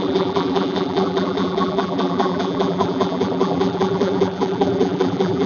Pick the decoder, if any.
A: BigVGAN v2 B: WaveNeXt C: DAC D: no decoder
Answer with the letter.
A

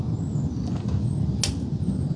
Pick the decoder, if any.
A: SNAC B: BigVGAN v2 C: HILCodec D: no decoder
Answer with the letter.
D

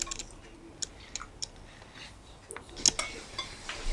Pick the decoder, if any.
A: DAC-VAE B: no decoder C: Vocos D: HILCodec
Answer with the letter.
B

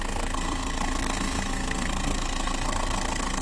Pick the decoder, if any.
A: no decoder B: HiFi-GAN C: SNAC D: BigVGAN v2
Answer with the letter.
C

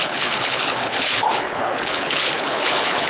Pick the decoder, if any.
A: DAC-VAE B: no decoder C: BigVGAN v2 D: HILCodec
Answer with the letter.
D